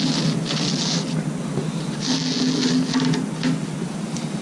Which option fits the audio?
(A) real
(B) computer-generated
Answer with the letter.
A